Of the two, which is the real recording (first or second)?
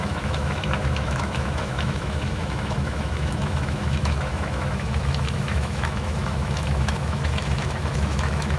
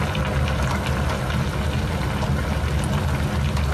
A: second